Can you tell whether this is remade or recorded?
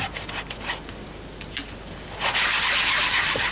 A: recorded